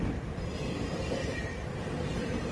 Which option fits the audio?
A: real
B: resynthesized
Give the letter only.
A